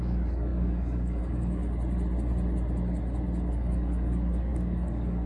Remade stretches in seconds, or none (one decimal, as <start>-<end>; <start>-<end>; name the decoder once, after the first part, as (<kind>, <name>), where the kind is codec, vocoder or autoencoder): 0.0-1.6 (codec, DAC); 3.5-5.3